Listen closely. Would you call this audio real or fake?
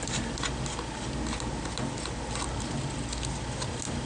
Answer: real